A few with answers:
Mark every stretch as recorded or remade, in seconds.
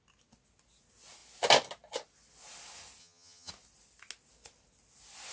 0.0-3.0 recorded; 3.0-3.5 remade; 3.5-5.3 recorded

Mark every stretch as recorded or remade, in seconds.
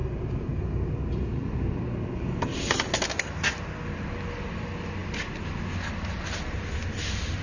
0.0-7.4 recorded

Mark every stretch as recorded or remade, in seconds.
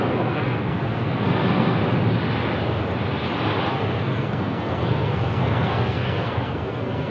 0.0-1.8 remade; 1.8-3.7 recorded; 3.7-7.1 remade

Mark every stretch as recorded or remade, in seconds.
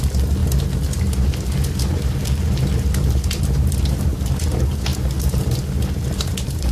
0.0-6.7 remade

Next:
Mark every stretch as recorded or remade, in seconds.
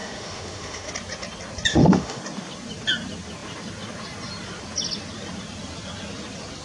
0.0-0.9 remade; 0.9-1.7 recorded; 1.7-2.2 remade; 2.2-6.6 recorded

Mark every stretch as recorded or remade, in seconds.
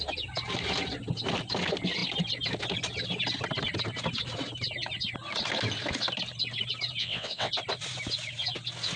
0.0-7.0 recorded; 7.0-7.5 remade; 7.5-9.0 recorded